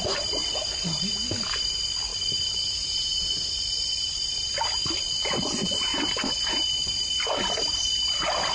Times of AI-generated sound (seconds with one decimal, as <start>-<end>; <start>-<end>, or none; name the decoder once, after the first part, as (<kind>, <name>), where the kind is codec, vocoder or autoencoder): 0.4-1.1 (vocoder, BigVGAN v2); 5.9-8.5